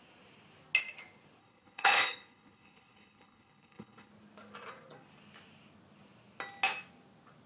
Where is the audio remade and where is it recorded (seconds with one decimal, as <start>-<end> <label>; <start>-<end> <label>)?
0.0-1.4 recorded; 1.4-4.1 remade; 4.1-7.5 recorded